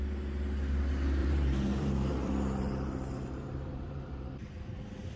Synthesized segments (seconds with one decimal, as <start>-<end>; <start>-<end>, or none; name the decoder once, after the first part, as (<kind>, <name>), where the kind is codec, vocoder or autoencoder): 1.2-4.3 (vocoder, BigVGAN v2)